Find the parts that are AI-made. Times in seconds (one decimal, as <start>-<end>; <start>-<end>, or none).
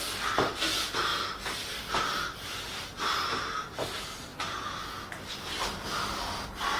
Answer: none